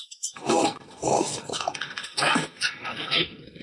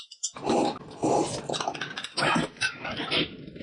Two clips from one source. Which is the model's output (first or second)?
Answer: first